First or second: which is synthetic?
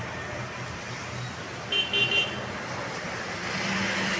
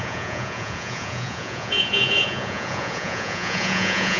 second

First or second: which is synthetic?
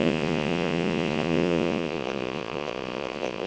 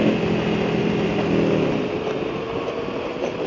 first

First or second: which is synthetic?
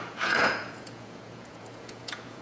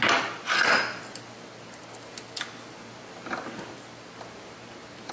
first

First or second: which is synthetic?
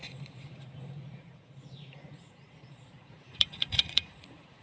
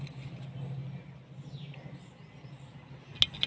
first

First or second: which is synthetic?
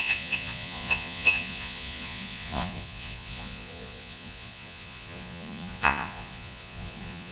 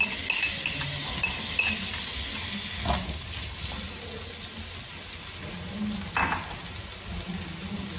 first